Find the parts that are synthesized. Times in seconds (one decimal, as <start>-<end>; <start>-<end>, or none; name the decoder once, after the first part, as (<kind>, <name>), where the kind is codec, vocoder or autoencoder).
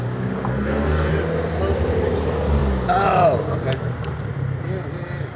0.5-1.1 (codec, SNAC)